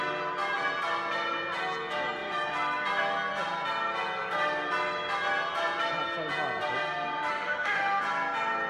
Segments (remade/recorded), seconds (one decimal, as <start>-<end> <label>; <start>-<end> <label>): 0.0-7.3 recorded; 7.3-8.0 remade; 8.0-8.7 recorded